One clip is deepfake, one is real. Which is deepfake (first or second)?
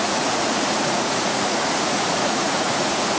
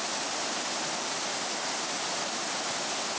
first